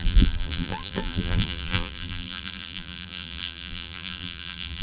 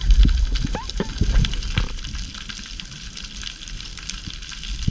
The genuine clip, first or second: second